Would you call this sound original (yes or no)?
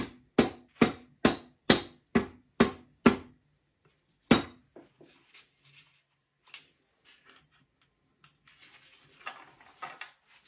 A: yes